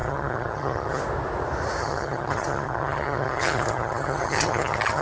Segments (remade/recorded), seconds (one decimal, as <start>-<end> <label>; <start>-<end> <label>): 0.0-1.0 remade; 1.0-1.8 recorded; 1.8-5.0 remade